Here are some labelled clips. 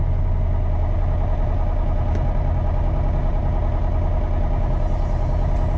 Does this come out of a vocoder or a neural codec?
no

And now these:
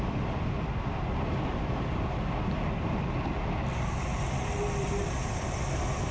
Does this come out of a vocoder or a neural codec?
no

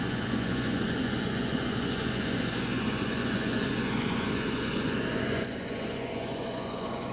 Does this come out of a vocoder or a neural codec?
yes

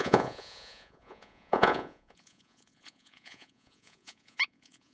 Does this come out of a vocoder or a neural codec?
yes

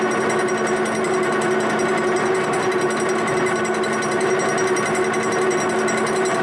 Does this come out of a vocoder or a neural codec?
no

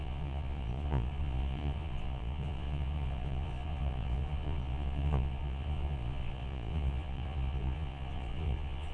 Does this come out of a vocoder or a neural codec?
yes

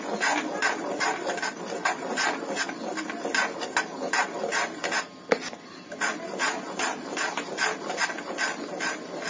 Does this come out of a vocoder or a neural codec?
no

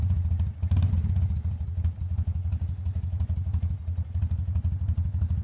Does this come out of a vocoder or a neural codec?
no